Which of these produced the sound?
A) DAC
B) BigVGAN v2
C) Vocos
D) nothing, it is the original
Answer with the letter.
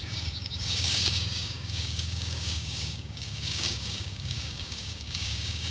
A